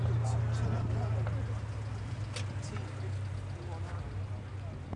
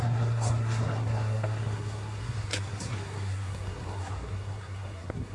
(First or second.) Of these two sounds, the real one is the first